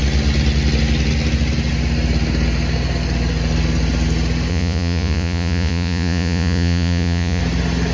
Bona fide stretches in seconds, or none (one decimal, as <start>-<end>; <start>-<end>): 0.0-4.5; 7.4-7.9